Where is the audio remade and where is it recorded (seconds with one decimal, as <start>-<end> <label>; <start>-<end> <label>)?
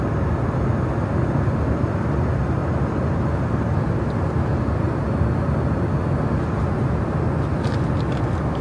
0.0-2.6 recorded; 2.6-5.1 remade; 5.1-8.6 recorded